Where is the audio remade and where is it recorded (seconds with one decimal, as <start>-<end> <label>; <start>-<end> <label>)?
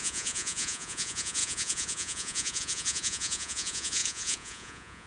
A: 0.0-5.1 remade